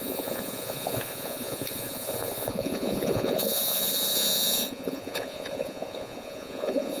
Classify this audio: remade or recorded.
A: remade